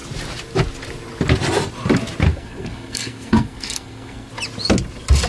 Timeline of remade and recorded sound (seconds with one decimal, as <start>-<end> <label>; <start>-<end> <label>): 0.0-2.3 recorded; 2.3-4.3 remade; 4.3-5.3 recorded